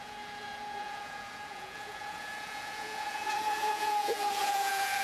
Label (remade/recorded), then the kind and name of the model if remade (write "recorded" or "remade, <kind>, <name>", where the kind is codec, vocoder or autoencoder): remade, vocoder, Vocos